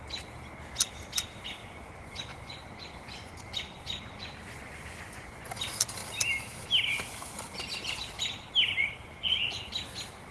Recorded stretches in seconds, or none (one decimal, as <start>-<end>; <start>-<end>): 0.0-1.6; 5.6-8.8; 9.7-10.3